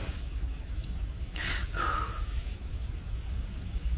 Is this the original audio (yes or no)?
no